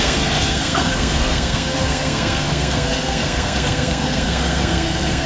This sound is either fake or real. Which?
fake